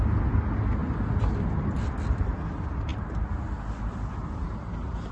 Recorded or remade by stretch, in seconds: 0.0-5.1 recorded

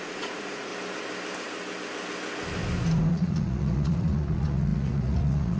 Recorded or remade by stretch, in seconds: 0.0-0.7 remade; 0.7-3.1 recorded; 3.1-5.6 remade

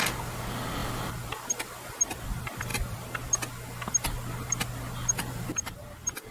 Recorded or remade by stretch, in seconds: 0.0-6.3 recorded

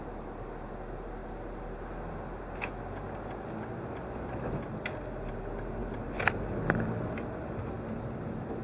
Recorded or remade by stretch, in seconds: 0.0-5.8 recorded; 5.8-7.7 remade; 7.7-8.6 recorded

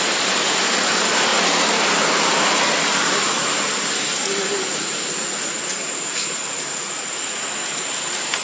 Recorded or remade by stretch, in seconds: 0.0-6.7 recorded; 6.7-7.4 remade; 7.4-8.4 recorded

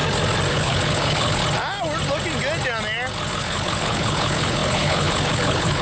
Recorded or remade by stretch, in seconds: 0.0-0.5 recorded; 0.5-1.4 remade; 1.4-3.3 recorded; 3.3-5.8 remade

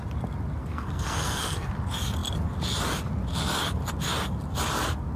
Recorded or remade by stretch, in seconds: 0.0-0.6 recorded; 0.6-1.7 remade; 1.7-5.2 recorded